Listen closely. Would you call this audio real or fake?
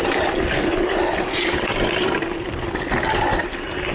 real